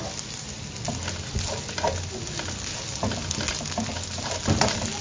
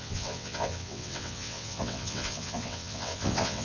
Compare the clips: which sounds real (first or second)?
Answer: first